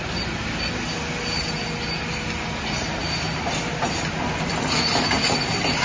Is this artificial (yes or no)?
no